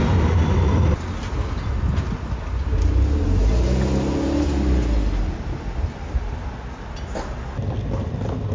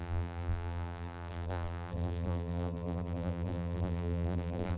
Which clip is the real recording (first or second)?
first